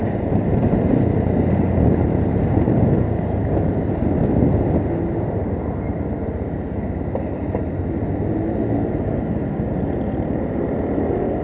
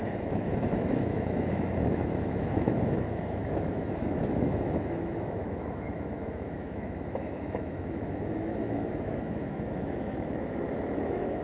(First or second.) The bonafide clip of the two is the first